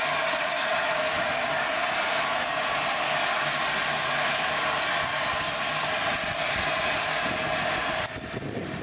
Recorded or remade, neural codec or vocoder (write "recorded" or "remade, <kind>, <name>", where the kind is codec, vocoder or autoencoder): recorded